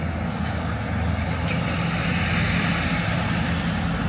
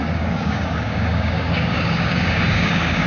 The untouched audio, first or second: first